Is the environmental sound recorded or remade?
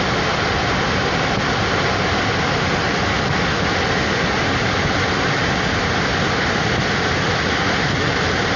recorded